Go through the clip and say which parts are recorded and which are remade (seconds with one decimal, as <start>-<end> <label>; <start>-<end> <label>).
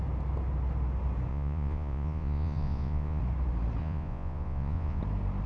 0.0-1.3 recorded; 1.3-3.2 remade; 3.2-3.8 recorded; 3.8-5.0 remade; 5.0-5.5 recorded